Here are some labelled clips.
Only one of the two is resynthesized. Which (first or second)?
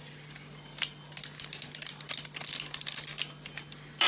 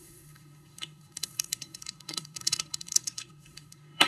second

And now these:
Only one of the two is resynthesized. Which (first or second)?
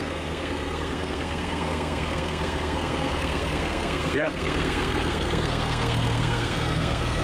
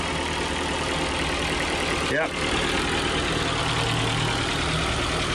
first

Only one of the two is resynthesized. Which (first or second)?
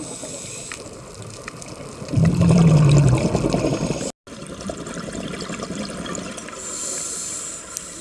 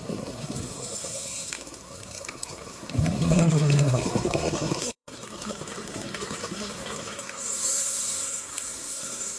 second